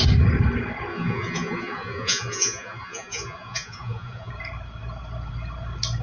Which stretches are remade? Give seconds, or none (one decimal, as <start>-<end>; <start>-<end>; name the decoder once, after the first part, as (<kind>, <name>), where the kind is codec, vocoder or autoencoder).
0.9-4.3 (vocoder, Vocos)